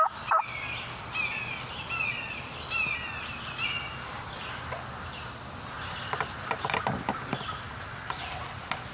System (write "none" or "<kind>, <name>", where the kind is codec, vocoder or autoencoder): none